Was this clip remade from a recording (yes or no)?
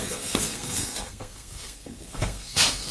yes